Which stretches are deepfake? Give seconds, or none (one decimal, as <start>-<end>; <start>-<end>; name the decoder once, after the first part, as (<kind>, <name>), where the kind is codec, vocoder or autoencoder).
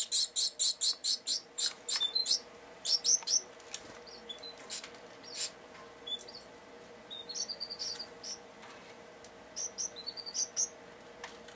1.0-1.8 (vocoder, BigVGAN v2); 2.2-3.5; 8.5-9.1